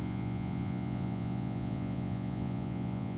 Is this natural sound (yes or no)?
no